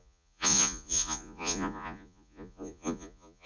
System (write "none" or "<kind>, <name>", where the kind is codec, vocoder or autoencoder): vocoder, Vocos